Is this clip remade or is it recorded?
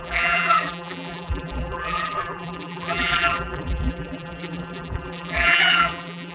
remade